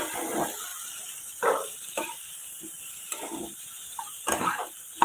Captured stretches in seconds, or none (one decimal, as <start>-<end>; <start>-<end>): 0.0-0.7; 2.9-3.5; 4.5-5.0